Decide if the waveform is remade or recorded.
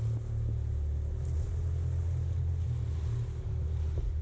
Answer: recorded